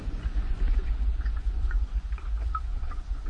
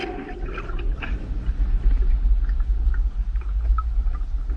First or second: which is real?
second